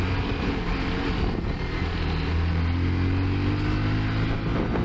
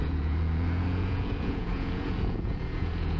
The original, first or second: first